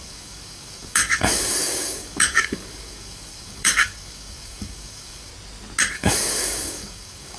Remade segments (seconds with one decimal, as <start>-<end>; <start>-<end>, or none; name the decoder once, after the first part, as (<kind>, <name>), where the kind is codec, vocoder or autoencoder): 0.0-5.3 (codec, DAC); 5.9-7.4